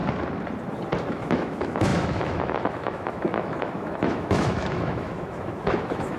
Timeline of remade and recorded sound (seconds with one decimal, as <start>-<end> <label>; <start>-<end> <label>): 0.0-1.1 recorded; 1.1-6.2 remade